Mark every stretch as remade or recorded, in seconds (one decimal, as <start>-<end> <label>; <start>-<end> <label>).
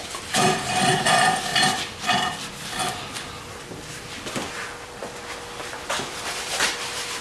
0.0-1.5 remade; 1.5-4.5 recorded; 4.5-5.0 remade; 5.0-6.2 recorded; 6.2-7.2 remade